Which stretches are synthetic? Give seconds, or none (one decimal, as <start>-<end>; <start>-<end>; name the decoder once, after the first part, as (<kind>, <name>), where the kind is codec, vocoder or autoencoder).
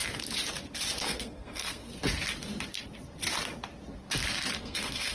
1.0-1.9 (codec, SNAC); 4.6-5.1